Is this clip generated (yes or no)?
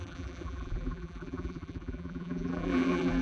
yes